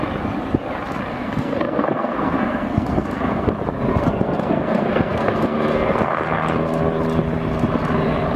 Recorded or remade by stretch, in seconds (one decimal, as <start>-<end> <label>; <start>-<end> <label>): 0.0-1.1 recorded; 1.1-3.5 remade; 3.5-3.9 recorded; 3.9-6.8 remade; 6.8-8.4 recorded